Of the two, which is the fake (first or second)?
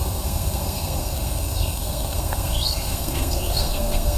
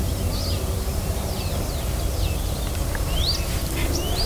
first